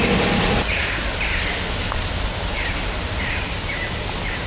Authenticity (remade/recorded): recorded